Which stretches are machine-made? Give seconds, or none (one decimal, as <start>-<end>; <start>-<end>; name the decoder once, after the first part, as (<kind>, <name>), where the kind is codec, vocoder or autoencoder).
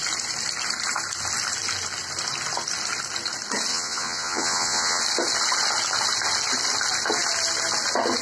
3.7-5.0 (vocoder, Vocos)